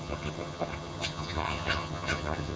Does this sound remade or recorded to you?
remade